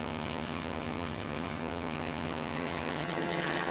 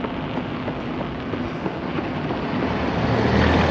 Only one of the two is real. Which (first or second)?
second